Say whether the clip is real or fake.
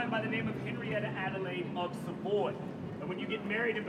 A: real